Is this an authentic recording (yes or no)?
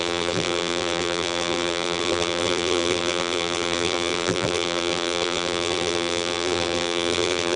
no